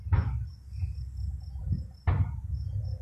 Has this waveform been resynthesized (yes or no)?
no